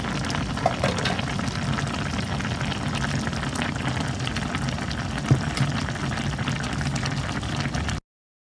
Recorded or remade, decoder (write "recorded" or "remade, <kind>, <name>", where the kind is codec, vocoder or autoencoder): recorded